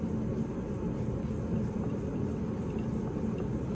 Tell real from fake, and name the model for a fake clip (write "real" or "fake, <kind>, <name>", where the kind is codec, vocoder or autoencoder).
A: real